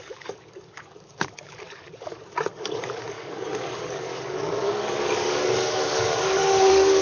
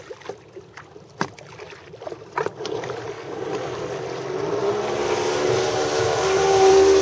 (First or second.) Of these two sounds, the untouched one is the second